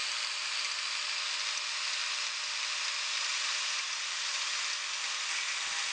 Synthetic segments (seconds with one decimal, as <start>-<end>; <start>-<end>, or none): 3.3-4.6